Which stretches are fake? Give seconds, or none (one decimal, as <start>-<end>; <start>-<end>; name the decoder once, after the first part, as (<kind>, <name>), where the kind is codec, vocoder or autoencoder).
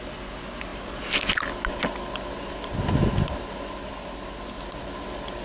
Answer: none